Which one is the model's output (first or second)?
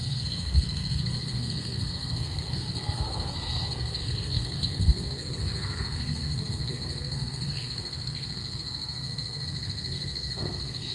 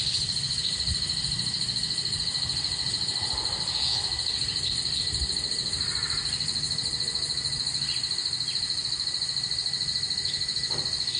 first